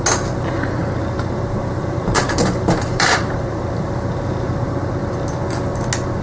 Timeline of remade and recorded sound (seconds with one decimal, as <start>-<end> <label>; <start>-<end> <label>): 0.0-0.8 recorded; 0.8-4.5 remade; 4.5-6.2 recorded